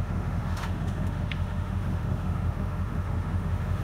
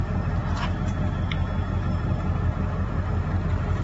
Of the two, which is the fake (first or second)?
first